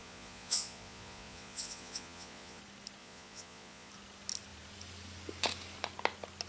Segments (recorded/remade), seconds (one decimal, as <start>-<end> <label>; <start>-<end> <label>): 0.0-2.6 remade; 2.6-3.0 recorded; 3.0-3.9 remade; 3.9-6.5 recorded